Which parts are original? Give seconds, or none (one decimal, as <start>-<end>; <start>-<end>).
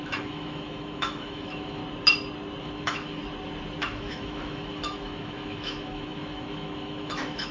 1.8-2.6; 3.2-3.8